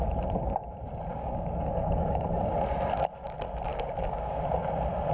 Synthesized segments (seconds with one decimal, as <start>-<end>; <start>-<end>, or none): 1.1-2.3; 3.7-4.4